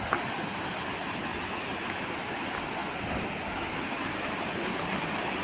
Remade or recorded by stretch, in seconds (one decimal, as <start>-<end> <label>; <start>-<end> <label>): 0.0-5.4 recorded